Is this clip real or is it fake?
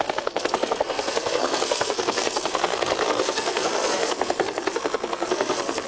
fake